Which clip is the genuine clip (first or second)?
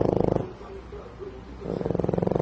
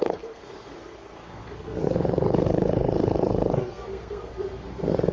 first